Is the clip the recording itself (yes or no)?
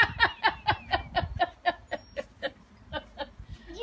yes